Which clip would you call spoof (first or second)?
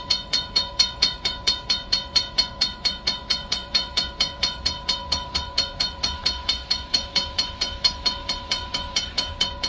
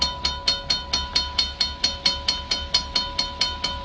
first